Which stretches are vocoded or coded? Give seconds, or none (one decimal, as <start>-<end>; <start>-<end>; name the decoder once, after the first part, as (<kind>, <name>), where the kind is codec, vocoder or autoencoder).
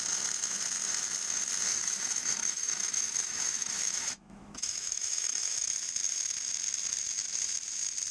1.7-5.7 (autoencoder, DAC-VAE)